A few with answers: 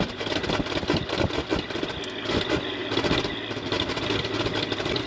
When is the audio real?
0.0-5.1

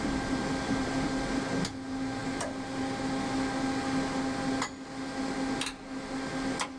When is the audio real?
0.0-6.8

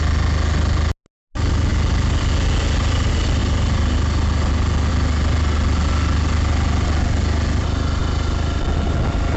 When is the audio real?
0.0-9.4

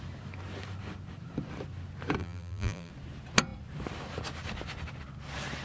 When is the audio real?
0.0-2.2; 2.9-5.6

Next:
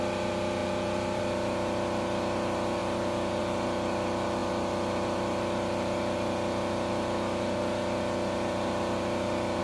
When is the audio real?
0.0-0.6; 1.2-9.6